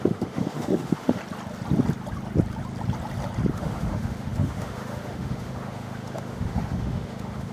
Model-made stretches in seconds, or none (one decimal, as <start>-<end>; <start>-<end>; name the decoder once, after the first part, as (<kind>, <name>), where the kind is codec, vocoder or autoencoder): 0.0-1.2 (autoencoder, DAC-VAE); 3.5-7.5